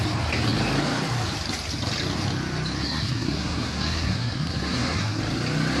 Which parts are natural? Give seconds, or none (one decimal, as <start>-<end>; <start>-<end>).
0.0-2.8; 5.2-5.8